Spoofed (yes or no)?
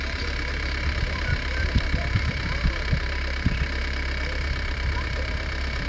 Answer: yes